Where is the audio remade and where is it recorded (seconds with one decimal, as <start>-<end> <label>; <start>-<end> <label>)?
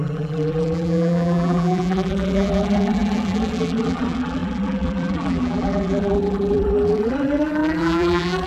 0.0-8.5 remade